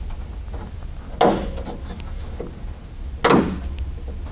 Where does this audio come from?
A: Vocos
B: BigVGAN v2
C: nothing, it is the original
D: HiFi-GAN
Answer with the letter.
C